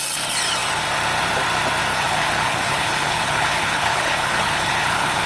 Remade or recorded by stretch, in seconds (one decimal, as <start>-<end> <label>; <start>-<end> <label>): 0.0-1.9 recorded; 1.9-5.3 remade